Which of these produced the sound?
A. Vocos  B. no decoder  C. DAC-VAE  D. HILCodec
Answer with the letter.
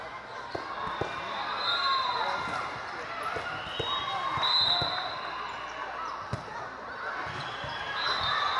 B